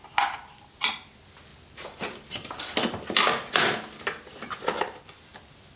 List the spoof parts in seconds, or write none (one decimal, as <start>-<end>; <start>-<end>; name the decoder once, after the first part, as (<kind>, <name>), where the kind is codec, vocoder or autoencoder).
none